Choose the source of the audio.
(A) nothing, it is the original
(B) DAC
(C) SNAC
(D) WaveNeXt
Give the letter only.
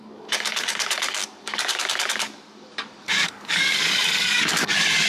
B